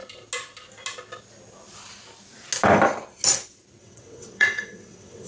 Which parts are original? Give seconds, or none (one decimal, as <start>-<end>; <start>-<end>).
0.0-3.8